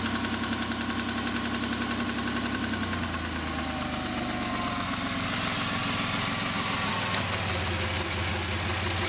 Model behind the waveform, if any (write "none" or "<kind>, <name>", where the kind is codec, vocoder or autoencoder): none